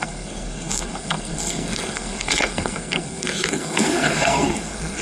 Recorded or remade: remade